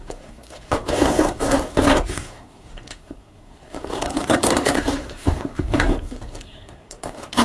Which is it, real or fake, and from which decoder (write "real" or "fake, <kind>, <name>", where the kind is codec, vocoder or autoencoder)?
fake, codec, SNAC